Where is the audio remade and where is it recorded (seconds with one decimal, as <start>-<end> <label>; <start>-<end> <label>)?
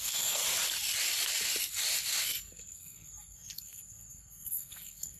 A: 0.0-0.4 remade; 0.4-2.2 recorded; 2.2-5.2 remade